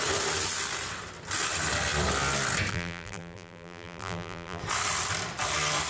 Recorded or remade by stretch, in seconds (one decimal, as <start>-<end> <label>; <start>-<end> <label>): 0.0-2.7 recorded; 2.7-4.6 remade; 4.6-5.9 recorded